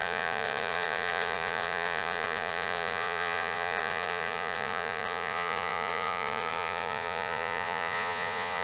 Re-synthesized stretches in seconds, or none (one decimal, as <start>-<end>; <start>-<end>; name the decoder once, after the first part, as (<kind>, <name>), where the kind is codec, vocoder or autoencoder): 0.0-8.6 (vocoder, Vocos)